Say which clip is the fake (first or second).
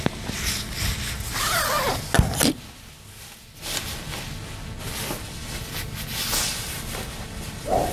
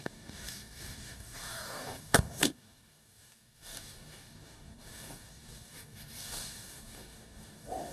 second